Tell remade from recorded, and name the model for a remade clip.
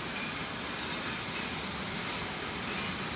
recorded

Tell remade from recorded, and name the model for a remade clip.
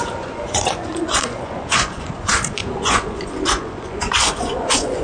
remade, vocoder, Vocos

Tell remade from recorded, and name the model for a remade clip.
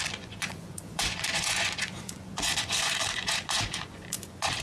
remade, vocoder, Vocos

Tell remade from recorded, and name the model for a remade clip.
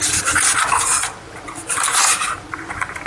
recorded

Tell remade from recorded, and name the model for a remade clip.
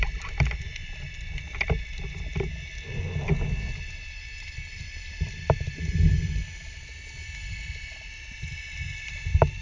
recorded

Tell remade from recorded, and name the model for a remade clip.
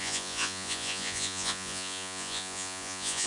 remade, vocoder, Vocos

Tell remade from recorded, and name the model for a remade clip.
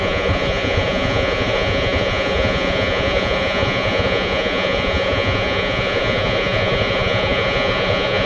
remade, vocoder, Vocos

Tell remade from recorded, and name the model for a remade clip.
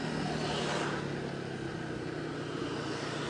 recorded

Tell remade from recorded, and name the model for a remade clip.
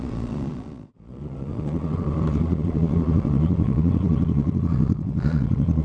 remade, vocoder, Vocos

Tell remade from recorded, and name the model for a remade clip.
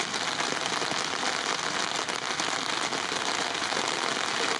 recorded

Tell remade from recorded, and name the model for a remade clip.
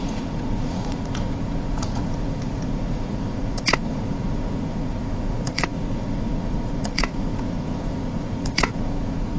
remade, vocoder, Vocos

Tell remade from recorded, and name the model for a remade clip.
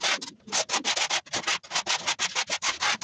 recorded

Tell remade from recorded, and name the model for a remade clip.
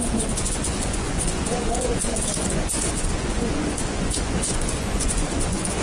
remade, vocoder, Vocos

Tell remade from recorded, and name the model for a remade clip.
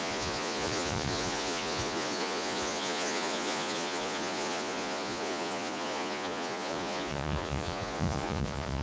remade, vocoder, Vocos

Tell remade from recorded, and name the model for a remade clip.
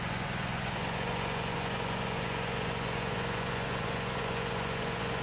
remade, vocoder, Vocos